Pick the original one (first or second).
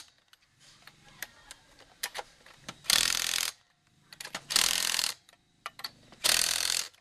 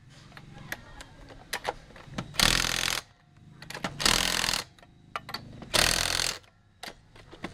second